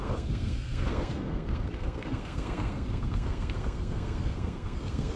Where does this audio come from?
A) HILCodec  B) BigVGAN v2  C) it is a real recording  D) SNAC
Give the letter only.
D